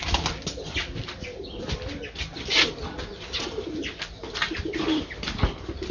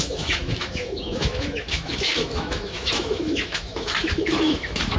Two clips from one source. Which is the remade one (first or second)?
second